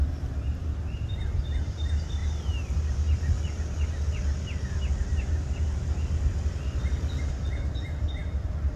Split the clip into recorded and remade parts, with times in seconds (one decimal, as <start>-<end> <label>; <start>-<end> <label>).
0.0-8.8 recorded

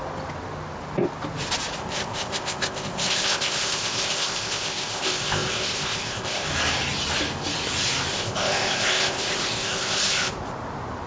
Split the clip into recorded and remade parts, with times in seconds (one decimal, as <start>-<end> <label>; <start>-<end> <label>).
0.0-1.8 recorded; 1.8-6.5 remade; 6.5-8.1 recorded; 8.1-10.3 remade; 10.3-11.1 recorded

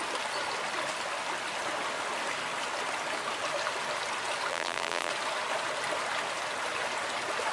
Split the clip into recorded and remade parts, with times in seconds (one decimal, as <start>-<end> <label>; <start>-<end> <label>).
0.0-4.5 recorded; 4.5-5.1 remade; 5.1-7.5 recorded

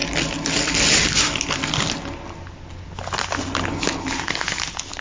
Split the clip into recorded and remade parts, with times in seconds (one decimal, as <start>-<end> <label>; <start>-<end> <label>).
0.0-5.0 recorded

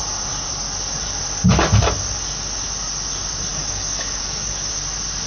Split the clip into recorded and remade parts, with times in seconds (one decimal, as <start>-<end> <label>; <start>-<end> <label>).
0.0-3.5 recorded; 3.5-4.7 remade; 4.7-5.3 recorded

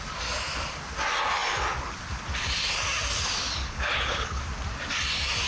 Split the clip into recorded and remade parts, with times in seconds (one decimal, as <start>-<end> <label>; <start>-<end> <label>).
0.0-3.6 recorded; 3.6-4.4 remade; 4.4-5.5 recorded